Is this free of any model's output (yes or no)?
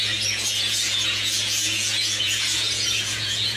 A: no